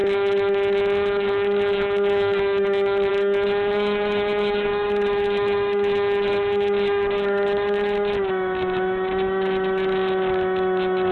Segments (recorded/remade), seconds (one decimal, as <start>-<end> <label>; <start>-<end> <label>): 0.0-11.1 remade